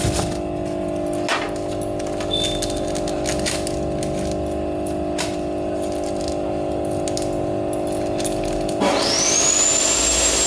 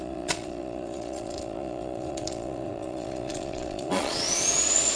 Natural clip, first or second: first